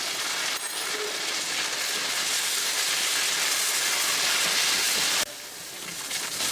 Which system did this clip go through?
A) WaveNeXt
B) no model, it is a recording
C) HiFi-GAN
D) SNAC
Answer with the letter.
B